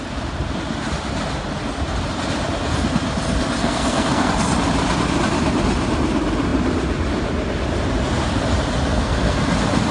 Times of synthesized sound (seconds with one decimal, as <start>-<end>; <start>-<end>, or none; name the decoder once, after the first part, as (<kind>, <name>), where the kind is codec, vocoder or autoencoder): 3.6-4.3 (codec, SNAC); 8.9-9.4

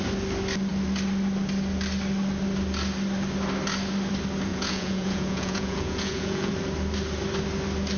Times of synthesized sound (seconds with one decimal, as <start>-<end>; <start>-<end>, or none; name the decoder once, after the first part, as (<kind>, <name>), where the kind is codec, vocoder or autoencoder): 4.5-6.5 (vocoder, Vocos)

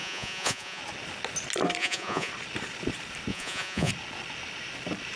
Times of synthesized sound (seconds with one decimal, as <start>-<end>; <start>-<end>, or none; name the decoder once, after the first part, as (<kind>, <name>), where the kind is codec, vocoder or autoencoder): 0.0-0.8 (vocoder, Vocos); 1.8-2.3; 3.3-3.9

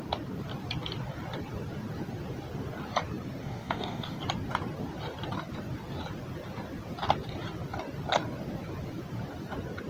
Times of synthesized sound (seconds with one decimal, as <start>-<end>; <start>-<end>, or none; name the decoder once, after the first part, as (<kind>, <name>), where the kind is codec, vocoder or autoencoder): 3.4-4.2 (codec, DAC)

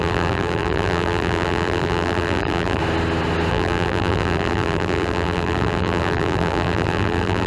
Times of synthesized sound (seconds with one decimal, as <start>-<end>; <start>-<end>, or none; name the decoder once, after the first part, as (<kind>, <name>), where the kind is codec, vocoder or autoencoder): 0.0-2.8 (vocoder, BigVGAN v2); 3.5-7.5

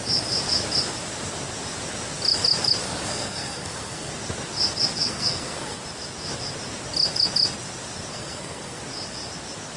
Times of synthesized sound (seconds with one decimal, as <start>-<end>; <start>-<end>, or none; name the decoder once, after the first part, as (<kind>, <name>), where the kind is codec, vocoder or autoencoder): 2.8-4.1 (codec, SNAC); 5.0-5.8; 8.1-8.8